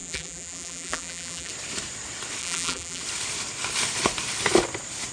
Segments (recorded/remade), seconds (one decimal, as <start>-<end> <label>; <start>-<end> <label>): 0.0-1.5 remade; 1.5-2.4 recorded; 2.4-3.0 remade; 3.0-5.1 recorded